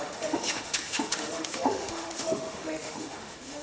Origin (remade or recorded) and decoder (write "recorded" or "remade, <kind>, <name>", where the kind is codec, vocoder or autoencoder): remade, autoencoder, DAC-VAE